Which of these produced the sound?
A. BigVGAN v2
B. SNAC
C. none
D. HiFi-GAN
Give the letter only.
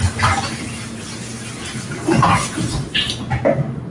C